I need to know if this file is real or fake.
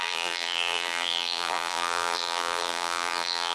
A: fake